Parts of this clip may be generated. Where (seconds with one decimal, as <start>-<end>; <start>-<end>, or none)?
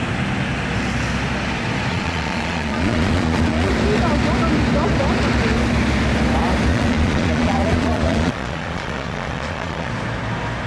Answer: 1.9-3.7; 6.7-9.9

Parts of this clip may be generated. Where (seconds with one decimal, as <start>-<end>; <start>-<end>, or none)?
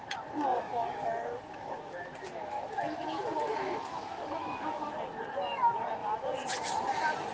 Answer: 0.5-4.9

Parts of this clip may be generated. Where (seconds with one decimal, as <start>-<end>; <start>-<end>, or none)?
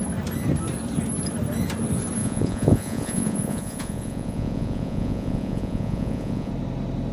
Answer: 2.2-6.5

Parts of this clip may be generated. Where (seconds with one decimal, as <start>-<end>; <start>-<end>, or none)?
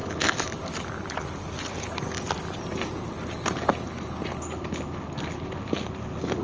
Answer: none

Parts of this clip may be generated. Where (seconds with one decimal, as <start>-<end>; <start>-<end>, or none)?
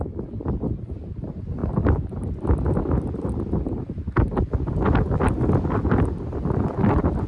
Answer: none